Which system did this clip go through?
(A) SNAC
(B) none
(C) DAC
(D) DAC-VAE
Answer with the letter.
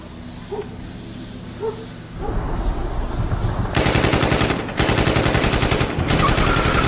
B